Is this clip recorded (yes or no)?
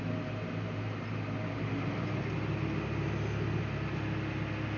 yes